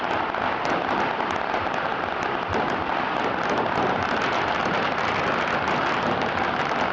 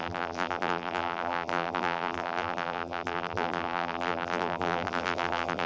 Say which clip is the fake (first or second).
second